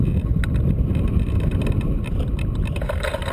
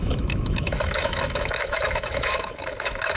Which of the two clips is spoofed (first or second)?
second